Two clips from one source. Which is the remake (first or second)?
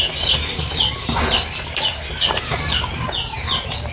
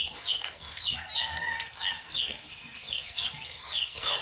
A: second